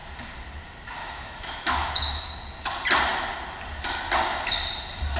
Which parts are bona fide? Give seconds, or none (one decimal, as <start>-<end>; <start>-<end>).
0.0-1.0; 2.3-5.2